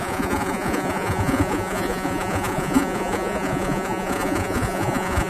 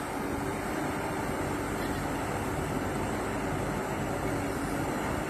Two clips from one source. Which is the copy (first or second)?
first